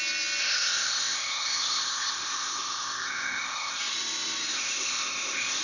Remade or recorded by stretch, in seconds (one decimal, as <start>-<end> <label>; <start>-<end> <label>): 0.0-0.4 recorded; 0.4-3.8 remade; 3.8-4.5 recorded; 4.5-5.6 remade